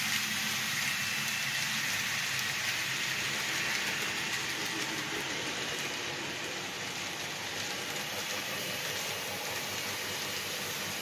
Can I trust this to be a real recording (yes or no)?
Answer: yes